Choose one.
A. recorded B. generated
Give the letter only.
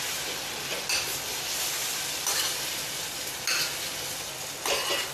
A